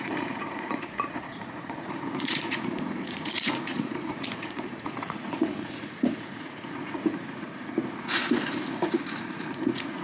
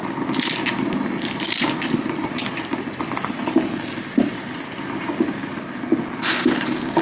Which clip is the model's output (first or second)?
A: first